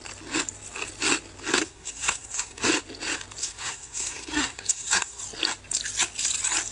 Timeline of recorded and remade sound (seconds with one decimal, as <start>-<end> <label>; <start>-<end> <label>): 0.0-1.5 recorded; 1.5-2.7 remade; 2.7-3.4 recorded; 3.4-5.2 remade; 5.2-6.7 recorded